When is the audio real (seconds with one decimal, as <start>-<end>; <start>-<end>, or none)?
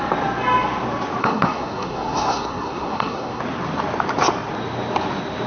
0.0-1.2; 3.4-5.5